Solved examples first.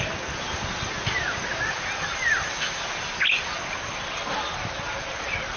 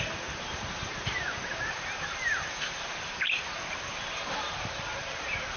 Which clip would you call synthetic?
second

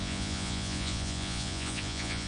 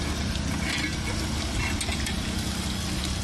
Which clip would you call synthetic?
first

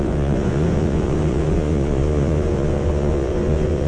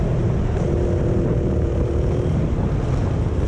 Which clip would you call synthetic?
first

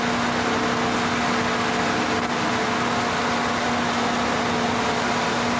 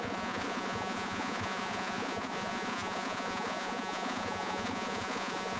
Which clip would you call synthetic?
second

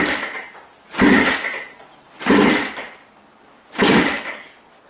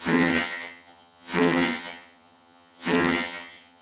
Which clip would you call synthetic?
second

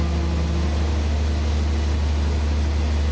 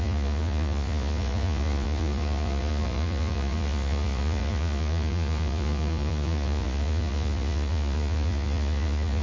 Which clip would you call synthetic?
second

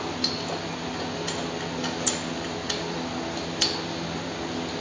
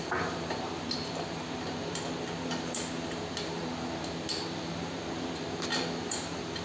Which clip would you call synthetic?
second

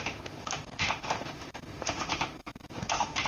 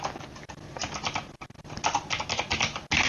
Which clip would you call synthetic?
first